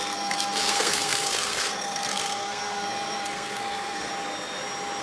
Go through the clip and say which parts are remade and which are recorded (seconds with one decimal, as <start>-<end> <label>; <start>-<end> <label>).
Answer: 0.0-4.1 remade; 4.1-5.0 recorded